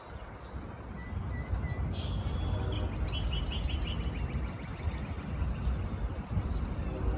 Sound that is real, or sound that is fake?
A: real